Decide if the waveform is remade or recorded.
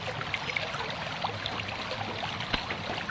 recorded